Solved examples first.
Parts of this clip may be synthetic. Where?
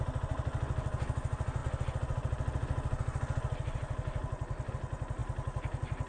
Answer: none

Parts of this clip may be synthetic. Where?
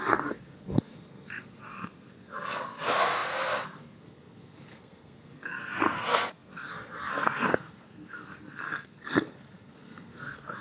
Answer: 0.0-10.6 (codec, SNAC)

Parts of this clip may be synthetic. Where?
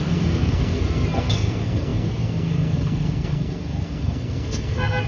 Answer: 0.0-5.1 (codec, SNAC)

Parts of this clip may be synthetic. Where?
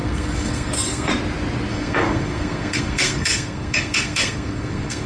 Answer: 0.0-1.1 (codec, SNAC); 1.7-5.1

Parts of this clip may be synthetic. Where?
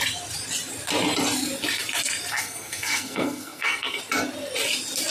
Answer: 2.3-4.0 (codec, SNAC)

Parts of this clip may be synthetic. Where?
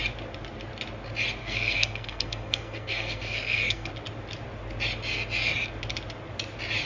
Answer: 1.4-3.9 (codec, SNAC)